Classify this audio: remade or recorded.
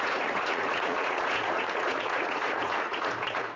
remade